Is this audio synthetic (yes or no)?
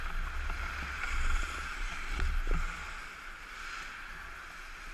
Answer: no